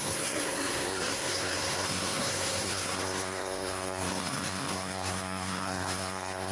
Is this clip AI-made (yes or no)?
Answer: yes